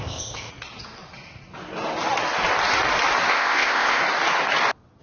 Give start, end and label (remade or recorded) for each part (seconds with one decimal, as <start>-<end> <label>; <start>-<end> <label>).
0.0-0.5 remade; 0.5-3.3 recorded; 3.3-4.0 remade; 4.0-5.0 recorded